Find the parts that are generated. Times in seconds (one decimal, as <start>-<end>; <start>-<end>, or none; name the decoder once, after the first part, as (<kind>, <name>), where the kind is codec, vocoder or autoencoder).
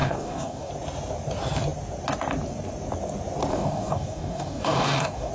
0.0-0.7 (codec, DAC); 3.5-5.3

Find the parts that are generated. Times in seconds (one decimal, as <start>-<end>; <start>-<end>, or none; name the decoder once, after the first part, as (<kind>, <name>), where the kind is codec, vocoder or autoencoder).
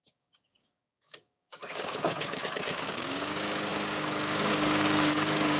0.0-5.6 (codec, DAC)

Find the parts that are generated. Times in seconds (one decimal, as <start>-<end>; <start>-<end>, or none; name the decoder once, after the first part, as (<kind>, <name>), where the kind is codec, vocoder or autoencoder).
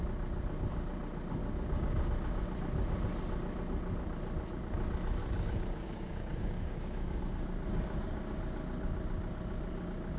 1.4-2.1 (codec, DAC); 5.2-7.2; 7.7-8.4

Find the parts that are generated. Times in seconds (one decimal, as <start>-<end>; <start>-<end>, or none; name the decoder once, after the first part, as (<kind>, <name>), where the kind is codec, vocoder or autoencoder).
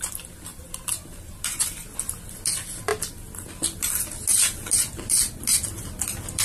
none